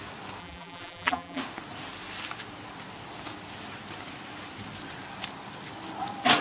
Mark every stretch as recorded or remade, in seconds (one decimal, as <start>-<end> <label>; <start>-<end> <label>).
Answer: 0.0-0.4 recorded; 0.4-1.4 remade; 1.4-6.4 recorded